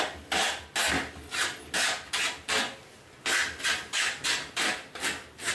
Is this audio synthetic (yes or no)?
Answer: no